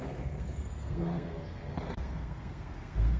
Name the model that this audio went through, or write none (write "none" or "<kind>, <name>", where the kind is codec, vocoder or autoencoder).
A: codec, SNAC